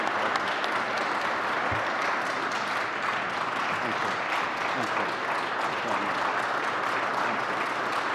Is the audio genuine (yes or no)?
yes